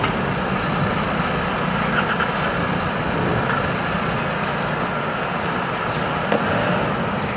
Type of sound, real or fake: real